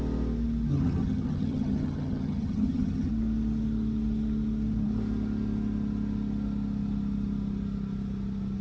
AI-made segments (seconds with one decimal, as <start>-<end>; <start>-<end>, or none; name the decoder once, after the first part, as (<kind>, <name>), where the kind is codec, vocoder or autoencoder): 0.7-3.1 (vocoder, HiFi-GAN)